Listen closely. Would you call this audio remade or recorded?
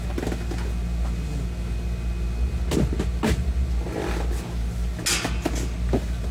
recorded